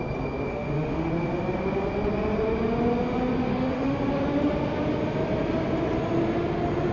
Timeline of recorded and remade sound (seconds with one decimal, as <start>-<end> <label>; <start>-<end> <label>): 0.0-0.5 recorded; 0.5-1.1 remade; 1.1-3.5 recorded; 3.5-4.0 remade; 4.0-6.9 recorded